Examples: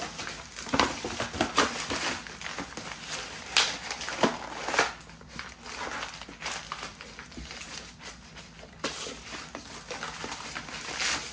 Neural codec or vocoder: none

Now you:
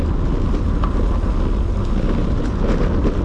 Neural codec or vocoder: none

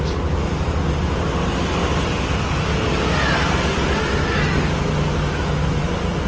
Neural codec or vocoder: none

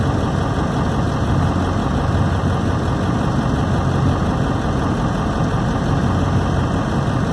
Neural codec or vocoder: none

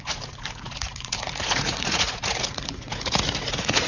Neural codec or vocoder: vocoder, Vocos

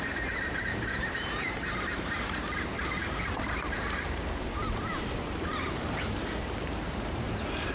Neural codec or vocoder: vocoder, BigVGAN v2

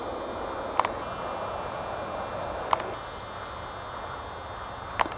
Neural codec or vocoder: none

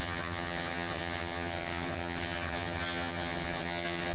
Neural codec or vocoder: vocoder, HiFi-GAN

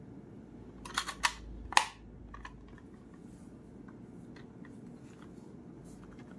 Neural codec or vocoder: none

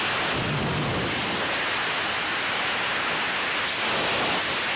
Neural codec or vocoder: none